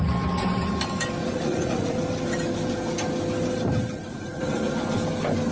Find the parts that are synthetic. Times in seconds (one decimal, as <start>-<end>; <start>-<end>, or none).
1.2-1.9; 4.1-4.7